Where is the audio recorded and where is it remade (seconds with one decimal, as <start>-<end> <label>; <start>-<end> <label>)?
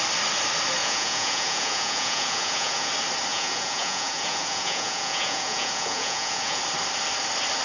0.0-0.8 recorded; 0.8-2.9 remade; 2.9-3.3 recorded; 3.3-6.6 remade; 6.6-7.6 recorded